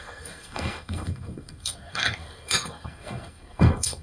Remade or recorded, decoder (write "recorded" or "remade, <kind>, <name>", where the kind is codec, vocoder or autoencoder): remade, codec, SNAC